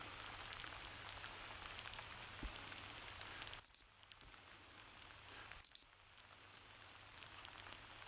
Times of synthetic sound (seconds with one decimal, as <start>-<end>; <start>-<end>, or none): none